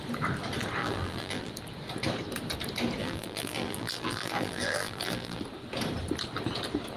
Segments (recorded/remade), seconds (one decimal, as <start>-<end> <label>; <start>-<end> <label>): 0.0-0.8 recorded; 0.8-1.5 remade; 1.5-3.0 recorded; 3.0-5.4 remade; 5.4-7.0 recorded